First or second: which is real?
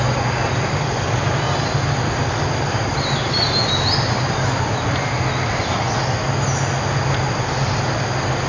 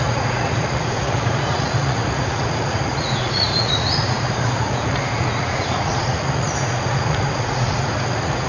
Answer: first